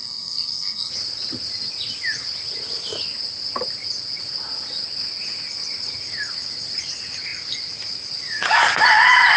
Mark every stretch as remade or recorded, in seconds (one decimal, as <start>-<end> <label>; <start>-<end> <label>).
0.0-0.9 remade; 0.9-9.4 recorded